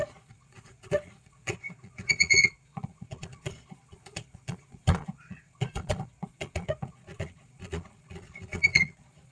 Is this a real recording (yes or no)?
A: no